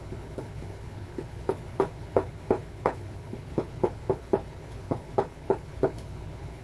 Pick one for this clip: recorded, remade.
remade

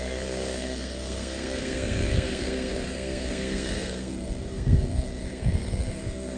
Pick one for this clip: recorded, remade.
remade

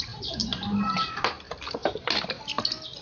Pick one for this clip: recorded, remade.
recorded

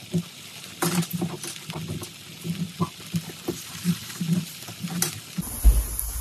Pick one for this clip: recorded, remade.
recorded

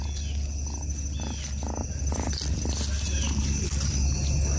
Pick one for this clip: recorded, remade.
recorded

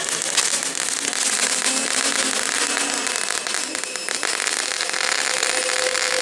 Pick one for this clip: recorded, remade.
recorded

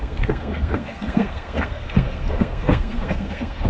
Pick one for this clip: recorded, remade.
remade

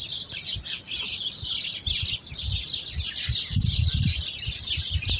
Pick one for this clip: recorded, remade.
recorded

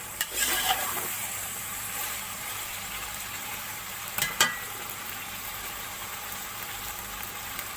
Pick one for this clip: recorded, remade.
remade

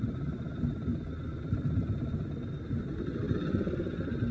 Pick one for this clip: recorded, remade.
recorded